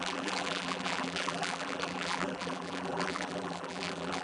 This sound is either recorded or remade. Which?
remade